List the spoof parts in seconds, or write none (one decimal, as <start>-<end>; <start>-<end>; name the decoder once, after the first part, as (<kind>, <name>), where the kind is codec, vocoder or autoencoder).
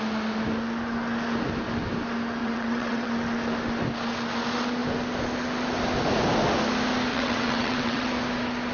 2.4-3.1 (vocoder, WaveNeXt); 7.1-8.1